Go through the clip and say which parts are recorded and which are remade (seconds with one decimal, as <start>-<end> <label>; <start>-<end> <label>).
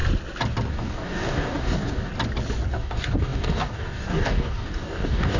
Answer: 0.0-0.7 recorded; 0.7-2.1 remade; 2.1-2.7 recorded; 2.7-5.4 remade